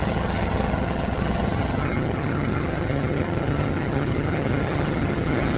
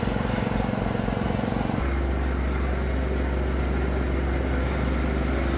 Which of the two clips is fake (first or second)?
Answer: first